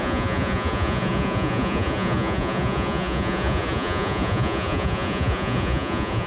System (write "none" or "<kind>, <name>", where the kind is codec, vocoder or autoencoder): vocoder, Vocos